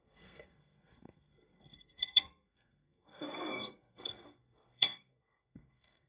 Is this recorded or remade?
remade